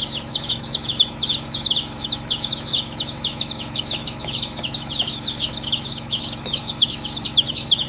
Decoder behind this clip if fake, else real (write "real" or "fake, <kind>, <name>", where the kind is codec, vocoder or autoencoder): fake, autoencoder, DAC-VAE